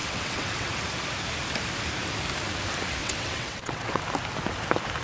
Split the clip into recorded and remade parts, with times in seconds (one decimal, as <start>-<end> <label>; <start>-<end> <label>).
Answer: 0.0-0.8 remade; 0.8-3.0 recorded; 3.0-4.0 remade; 4.0-5.0 recorded